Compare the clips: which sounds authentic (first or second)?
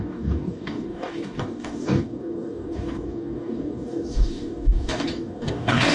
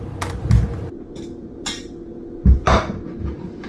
second